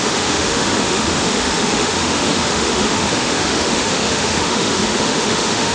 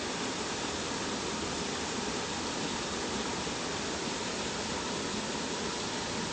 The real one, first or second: second